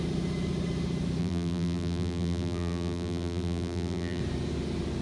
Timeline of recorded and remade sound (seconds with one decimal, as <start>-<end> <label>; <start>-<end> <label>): 0.0-1.2 recorded; 1.2-4.2 remade; 4.2-5.0 recorded